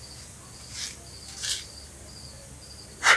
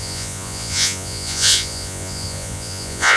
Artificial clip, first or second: second